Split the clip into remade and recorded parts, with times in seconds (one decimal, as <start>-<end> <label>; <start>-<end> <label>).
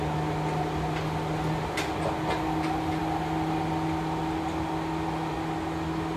0.0-6.2 recorded